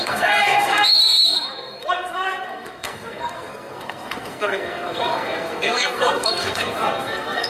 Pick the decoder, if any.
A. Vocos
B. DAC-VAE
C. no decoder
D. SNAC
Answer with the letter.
D